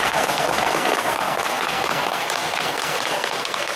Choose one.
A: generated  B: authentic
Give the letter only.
A